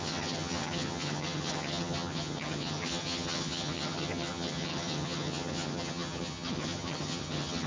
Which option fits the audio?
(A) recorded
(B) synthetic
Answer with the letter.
B